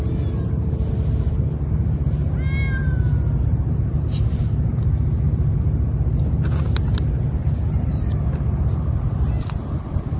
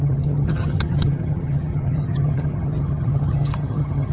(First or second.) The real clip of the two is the first